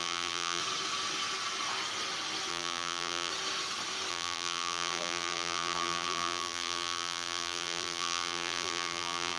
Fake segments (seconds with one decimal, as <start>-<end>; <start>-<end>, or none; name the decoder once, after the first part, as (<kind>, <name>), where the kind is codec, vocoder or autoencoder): 0.0-0.6 (vocoder, BigVGAN v2); 2.5-3.3; 4.1-9.4